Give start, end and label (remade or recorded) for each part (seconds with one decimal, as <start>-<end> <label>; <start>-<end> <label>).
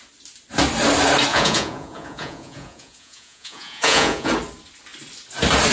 0.0-1.3 recorded; 1.3-4.3 remade; 4.3-5.7 recorded